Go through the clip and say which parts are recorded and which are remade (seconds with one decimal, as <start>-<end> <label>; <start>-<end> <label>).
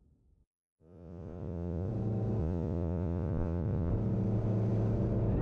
0.0-0.4 recorded; 0.4-1.9 remade; 1.9-2.4 recorded; 2.4-3.9 remade; 3.9-5.4 recorded